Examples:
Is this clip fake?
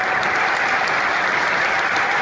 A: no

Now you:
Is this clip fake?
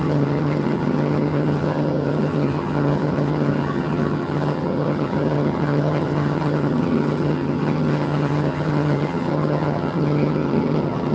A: yes